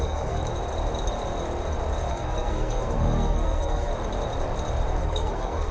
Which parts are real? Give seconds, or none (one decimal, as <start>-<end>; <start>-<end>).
0.4-2.1; 3.9-5.0

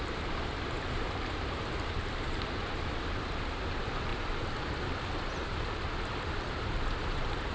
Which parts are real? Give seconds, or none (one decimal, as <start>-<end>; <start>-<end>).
4.1-4.6

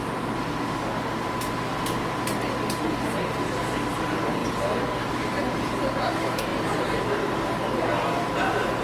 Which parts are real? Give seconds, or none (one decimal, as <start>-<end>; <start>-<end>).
0.0-6.5; 7.0-8.8

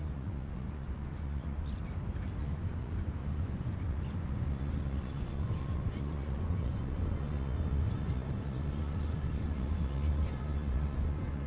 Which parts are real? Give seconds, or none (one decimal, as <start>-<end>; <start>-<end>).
1.8-2.4

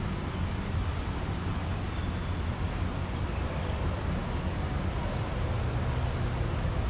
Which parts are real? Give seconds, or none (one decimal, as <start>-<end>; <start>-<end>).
0.0-6.9